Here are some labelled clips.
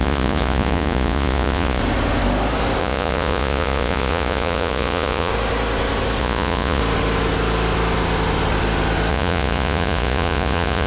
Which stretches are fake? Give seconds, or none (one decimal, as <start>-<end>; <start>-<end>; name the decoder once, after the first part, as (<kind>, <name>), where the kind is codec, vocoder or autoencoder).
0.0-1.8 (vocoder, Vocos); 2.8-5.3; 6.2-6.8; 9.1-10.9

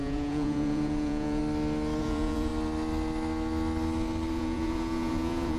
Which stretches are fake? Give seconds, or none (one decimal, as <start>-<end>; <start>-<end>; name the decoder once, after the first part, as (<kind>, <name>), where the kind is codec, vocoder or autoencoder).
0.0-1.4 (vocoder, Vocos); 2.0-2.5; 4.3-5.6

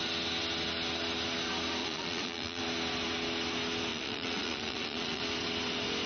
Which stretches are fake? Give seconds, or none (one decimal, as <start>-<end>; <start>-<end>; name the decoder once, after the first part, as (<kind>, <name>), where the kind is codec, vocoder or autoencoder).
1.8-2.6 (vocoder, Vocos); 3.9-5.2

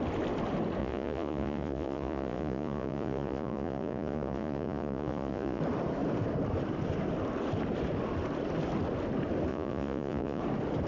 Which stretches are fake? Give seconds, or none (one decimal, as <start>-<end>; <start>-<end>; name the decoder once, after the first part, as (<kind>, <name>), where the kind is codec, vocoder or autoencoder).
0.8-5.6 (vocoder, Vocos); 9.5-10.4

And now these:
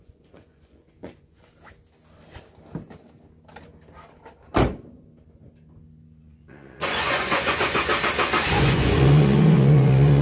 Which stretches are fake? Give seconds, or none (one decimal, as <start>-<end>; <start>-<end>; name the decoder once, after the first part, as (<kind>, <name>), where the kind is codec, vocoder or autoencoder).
0.0-1.5 (vocoder, Vocos); 6.2-7.9; 8.5-10.2